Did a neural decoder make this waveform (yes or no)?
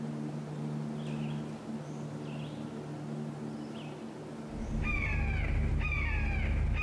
no